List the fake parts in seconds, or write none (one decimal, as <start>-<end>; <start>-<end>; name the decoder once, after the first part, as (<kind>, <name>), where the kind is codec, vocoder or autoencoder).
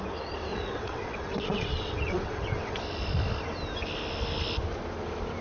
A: 0.5-2.8 (vocoder, WaveNeXt)